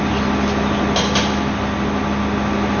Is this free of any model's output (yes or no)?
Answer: yes